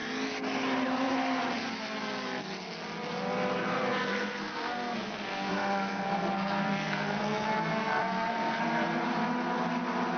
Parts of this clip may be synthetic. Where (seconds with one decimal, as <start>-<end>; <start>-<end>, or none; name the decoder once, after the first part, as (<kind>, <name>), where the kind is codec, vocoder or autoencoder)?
4.1-8.6 (codec, SNAC)